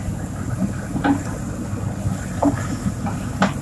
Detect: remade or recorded recorded